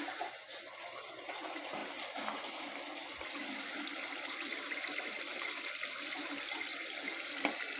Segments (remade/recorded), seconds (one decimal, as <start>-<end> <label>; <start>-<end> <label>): 0.0-7.8 recorded